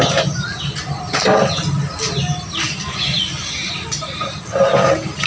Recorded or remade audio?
recorded